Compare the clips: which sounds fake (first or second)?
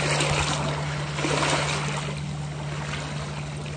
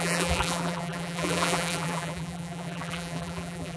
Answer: second